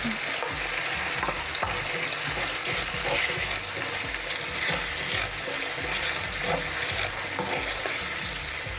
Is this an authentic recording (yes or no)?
yes